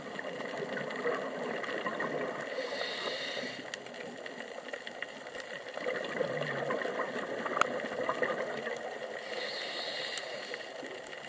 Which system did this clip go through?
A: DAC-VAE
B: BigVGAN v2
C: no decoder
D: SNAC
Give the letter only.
C